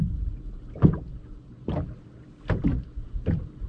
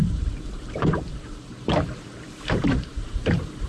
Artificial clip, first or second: second